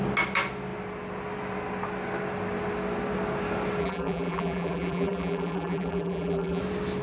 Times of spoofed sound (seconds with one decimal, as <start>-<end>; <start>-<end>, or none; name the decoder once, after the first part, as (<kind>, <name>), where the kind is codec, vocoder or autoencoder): 3.8-6.6 (vocoder, BigVGAN v2)